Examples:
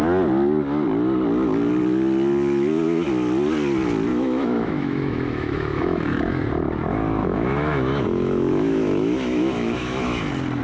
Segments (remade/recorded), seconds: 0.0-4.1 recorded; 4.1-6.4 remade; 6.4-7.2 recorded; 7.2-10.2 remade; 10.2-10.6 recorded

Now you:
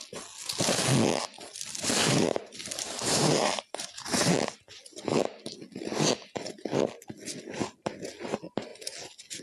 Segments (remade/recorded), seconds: 0.0-2.0 recorded; 2.0-4.3 remade; 4.3-9.4 recorded

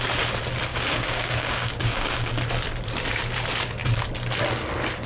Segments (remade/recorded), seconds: 0.0-0.7 recorded; 0.7-2.3 remade; 2.3-5.1 recorded

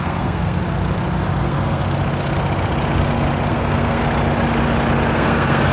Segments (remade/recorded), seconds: 0.0-0.6 remade; 0.6-1.4 recorded; 1.4-1.8 remade; 1.8-3.5 recorded; 3.5-4.0 remade; 4.0-5.1 recorded; 5.1-5.7 remade

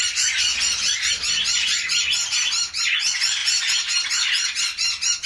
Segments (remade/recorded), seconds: 0.0-5.3 recorded

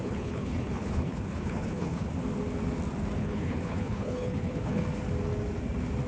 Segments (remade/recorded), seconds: 0.0-2.1 remade; 2.1-3.2 recorded; 3.2-4.8 remade; 4.8-6.1 recorded